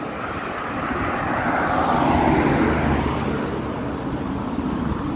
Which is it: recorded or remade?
recorded